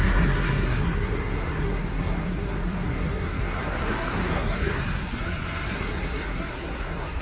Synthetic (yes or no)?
yes